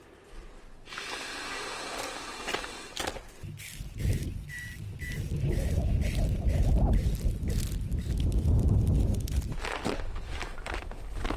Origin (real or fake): real